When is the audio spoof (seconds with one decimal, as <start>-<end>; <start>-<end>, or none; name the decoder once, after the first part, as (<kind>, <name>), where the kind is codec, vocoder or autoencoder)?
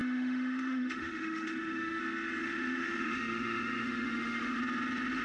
0.0-2.0 (autoencoder, DAC-VAE); 2.4-4.6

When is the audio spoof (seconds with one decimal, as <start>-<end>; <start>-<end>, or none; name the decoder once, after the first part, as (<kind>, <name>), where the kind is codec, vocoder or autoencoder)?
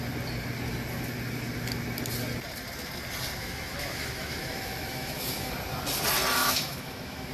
3.4-5.5 (autoencoder, DAC-VAE); 6.4-7.3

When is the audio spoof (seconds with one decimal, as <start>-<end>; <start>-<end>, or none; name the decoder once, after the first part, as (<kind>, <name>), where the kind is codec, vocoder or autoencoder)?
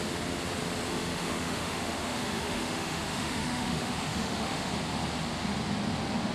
0.9-4.7 (autoencoder, DAC-VAE)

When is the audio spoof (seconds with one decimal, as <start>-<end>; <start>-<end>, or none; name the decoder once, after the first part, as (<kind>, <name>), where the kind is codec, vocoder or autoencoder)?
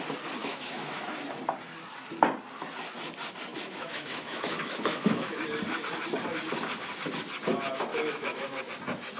0.4-1.2 (autoencoder, DAC-VAE); 3.5-5.4; 7.9-8.6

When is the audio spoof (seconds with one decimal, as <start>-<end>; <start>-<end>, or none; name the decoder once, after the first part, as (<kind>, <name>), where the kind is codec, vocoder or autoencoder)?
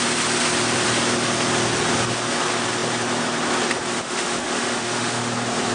3.9-5.2 (autoencoder, DAC-VAE)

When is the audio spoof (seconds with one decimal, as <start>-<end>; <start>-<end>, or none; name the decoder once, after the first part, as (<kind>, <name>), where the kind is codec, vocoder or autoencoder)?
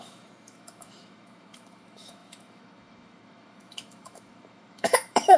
0.0-5.4 (autoencoder, DAC-VAE)